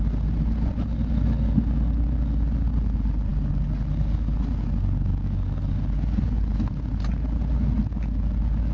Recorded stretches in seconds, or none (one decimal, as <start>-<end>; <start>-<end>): 0.0-8.7